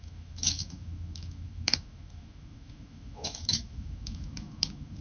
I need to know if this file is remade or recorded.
remade